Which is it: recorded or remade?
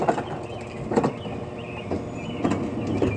recorded